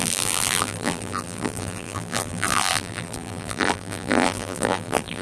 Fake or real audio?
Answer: fake